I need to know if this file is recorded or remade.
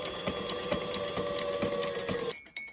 recorded